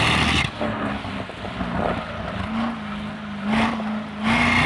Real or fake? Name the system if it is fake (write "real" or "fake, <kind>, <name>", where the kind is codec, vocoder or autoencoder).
real